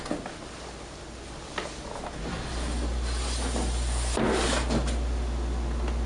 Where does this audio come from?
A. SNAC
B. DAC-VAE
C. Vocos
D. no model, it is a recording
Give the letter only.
D